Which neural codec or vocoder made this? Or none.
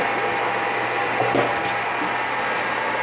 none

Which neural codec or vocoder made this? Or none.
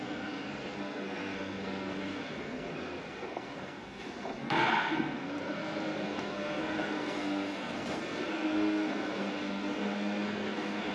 codec, SNAC